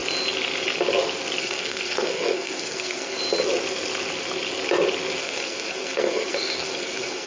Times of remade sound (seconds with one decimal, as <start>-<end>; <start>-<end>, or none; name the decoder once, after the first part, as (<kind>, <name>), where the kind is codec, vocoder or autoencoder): 1.4-3.2 (codec, SNAC); 5.2-7.3